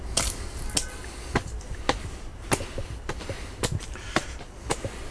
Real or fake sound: real